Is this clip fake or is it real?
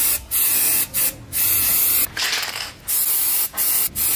real